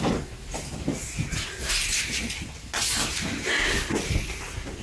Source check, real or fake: real